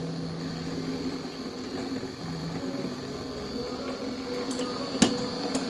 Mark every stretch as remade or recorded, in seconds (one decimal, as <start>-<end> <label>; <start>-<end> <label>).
0.0-5.7 recorded